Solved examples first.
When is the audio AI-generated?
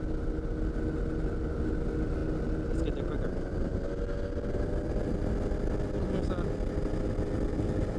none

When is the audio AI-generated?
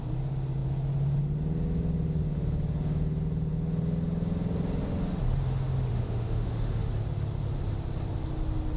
5.9-6.9 (autoencoder, DAC-VAE)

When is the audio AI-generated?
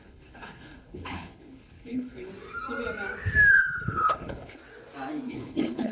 0.0-2.3 (codec, HILCodec); 3.5-4.6; 5.3-5.9